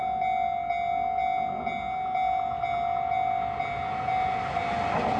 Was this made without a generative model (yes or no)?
yes